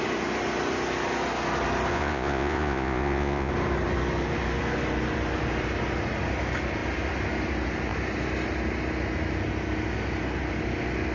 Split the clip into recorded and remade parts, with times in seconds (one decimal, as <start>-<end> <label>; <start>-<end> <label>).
0.0-1.9 recorded; 1.9-3.5 remade; 3.5-11.1 recorded

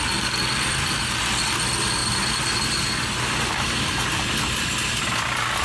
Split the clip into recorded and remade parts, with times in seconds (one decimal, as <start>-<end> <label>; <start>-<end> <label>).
0.0-5.6 recorded